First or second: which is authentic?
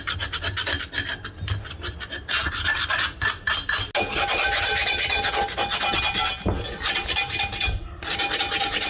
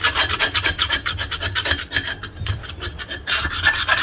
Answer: first